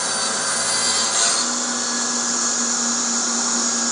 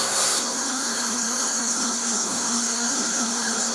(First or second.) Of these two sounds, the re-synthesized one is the second